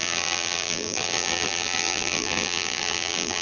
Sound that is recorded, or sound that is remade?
remade